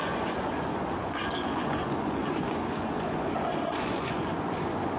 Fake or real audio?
fake